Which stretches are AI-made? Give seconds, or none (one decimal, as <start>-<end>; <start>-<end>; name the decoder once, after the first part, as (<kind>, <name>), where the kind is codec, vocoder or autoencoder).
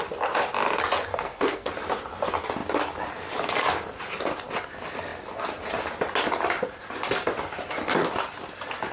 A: 1.1-1.7 (codec, SNAC)